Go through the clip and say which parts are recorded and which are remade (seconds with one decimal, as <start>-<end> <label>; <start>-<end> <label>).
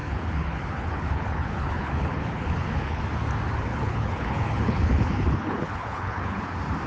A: 0.0-3.0 remade; 3.0-3.7 recorded; 3.7-6.4 remade; 6.4-6.9 recorded